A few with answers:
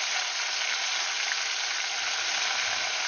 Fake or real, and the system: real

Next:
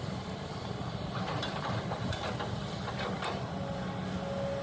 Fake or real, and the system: real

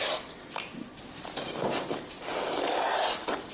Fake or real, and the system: real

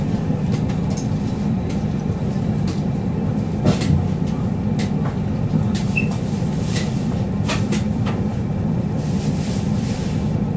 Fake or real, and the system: fake, vocoder, BigVGAN v2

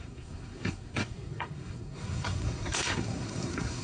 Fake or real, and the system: fake, codec, SNAC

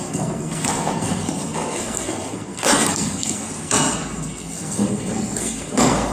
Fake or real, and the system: fake, codec, SNAC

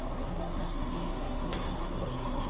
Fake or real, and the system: fake, codec, SNAC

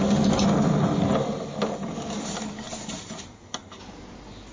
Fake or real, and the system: real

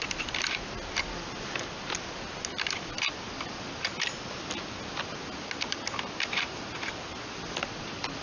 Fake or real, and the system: real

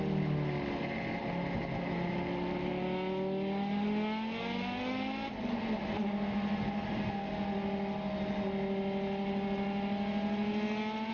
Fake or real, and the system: real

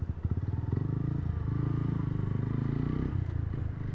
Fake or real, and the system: real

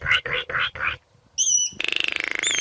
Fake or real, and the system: real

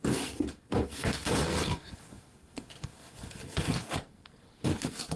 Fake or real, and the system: fake, codec, SNAC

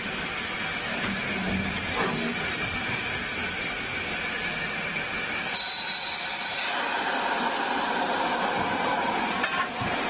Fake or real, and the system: fake, vocoder, BigVGAN v2